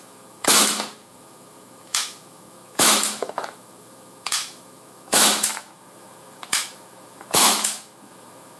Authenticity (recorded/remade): remade